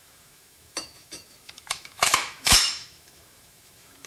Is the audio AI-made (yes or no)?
yes